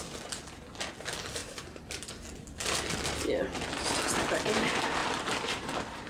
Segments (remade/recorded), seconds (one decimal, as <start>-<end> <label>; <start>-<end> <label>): 0.0-1.4 recorded; 1.4-2.1 remade; 2.1-5.0 recorded; 5.0-6.1 remade